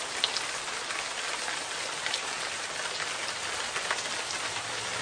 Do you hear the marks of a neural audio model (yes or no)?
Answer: no